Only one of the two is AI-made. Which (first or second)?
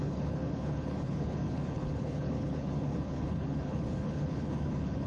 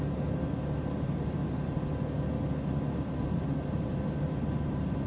first